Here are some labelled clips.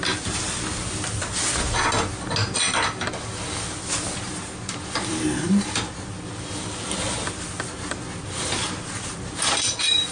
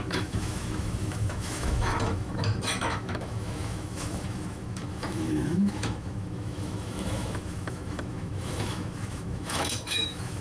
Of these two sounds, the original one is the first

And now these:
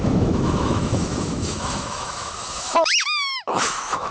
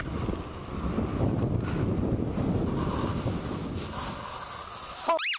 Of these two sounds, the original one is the second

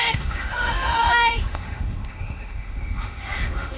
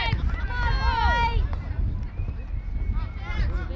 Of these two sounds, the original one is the second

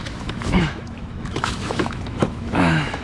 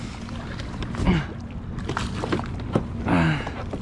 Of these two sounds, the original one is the second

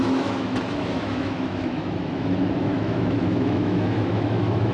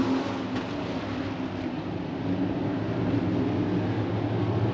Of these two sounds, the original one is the second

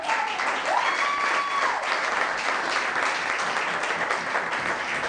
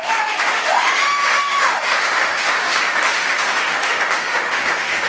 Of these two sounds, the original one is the first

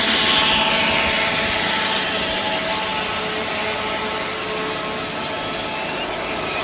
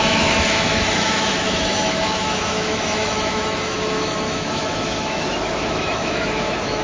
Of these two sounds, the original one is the first